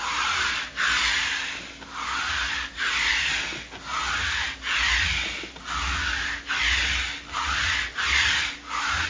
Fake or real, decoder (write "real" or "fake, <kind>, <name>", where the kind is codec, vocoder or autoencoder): real